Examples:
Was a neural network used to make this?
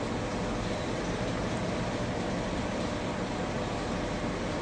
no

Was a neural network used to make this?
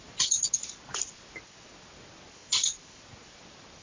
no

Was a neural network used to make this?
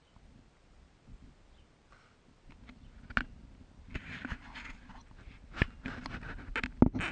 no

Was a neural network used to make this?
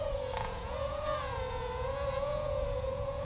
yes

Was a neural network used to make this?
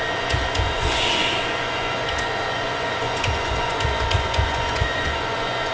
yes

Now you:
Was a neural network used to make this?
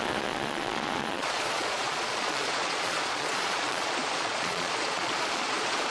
yes